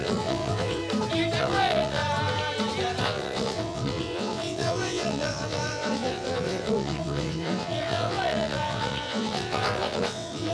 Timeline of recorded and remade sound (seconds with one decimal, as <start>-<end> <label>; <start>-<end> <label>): 0.0-0.8 remade; 0.8-1.4 recorded; 1.4-2.0 remade; 2.0-3.0 recorded; 3.0-10.5 remade